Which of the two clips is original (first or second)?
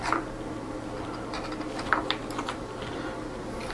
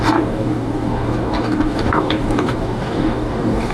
first